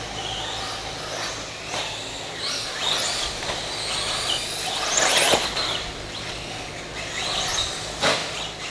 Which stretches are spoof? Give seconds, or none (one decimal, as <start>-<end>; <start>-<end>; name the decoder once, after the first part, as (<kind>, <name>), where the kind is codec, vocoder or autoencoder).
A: none